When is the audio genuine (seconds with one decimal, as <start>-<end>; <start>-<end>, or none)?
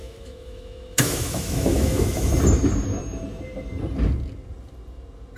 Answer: 2.3-5.4